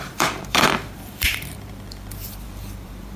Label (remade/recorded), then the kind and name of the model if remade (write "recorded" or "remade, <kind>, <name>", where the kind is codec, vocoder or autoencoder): remade, vocoder, BigVGAN v2